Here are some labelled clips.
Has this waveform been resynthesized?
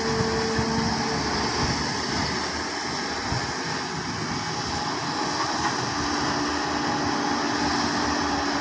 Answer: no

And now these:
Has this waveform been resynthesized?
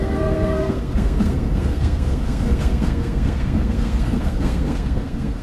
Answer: yes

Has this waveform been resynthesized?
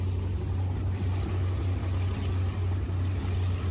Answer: no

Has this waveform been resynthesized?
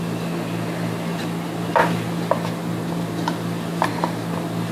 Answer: no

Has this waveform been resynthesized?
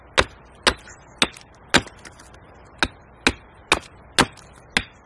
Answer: no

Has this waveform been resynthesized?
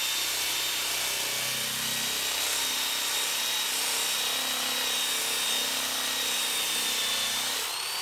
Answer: no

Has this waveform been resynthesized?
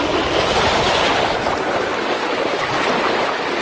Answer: no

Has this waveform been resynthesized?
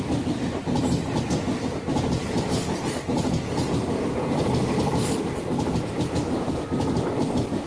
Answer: no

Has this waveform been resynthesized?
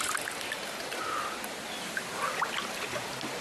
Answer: no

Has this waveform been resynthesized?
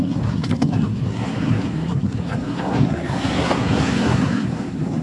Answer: yes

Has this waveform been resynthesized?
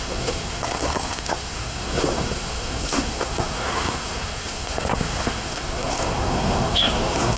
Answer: yes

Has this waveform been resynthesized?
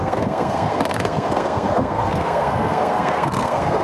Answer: yes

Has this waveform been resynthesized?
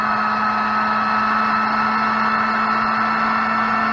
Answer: no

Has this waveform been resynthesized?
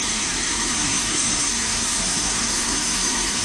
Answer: yes